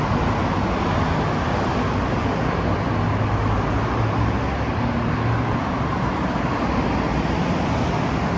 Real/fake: real